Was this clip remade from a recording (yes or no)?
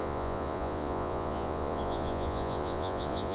yes